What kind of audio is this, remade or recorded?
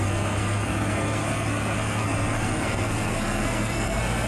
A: remade